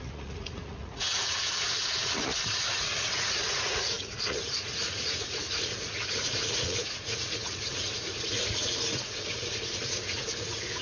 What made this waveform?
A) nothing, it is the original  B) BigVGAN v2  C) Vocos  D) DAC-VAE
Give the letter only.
C